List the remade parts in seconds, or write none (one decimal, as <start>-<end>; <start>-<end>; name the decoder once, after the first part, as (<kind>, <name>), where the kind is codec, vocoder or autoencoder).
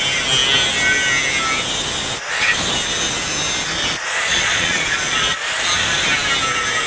4.3-5.5 (vocoder, Vocos)